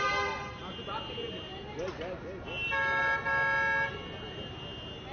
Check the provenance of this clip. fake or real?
real